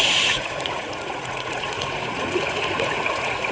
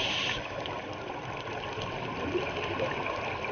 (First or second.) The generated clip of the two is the first